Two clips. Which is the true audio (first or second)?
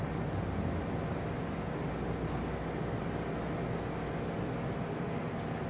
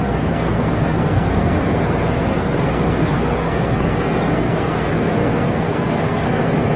first